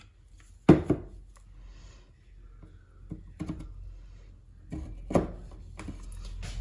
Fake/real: real